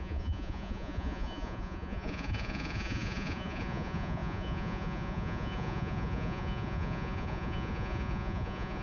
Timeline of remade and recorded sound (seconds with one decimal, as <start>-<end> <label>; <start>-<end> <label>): 0.0-8.8 remade